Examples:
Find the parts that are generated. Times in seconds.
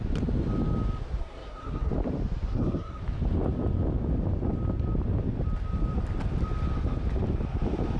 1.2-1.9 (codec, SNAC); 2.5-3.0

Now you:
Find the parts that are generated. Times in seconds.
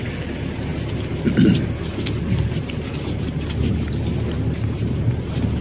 none